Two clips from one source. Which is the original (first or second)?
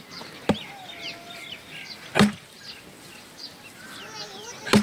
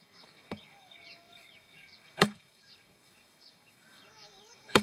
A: first